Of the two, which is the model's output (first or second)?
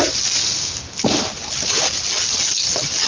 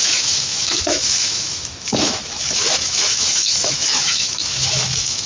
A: second